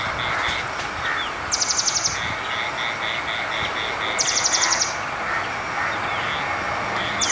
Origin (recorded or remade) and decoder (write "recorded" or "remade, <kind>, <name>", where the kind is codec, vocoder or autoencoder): recorded